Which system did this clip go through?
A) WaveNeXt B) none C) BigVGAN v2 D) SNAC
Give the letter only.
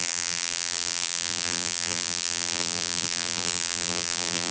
C